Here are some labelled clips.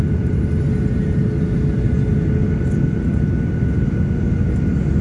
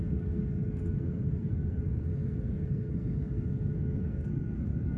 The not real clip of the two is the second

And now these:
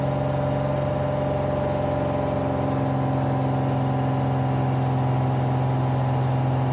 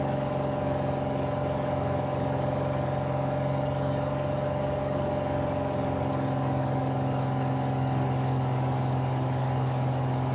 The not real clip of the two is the second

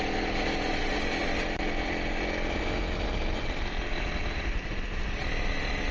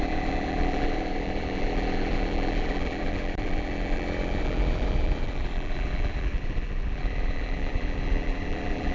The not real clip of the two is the second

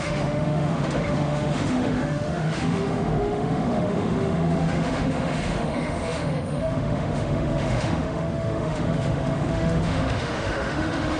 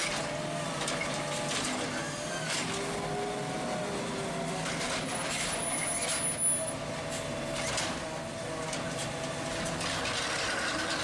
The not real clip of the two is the first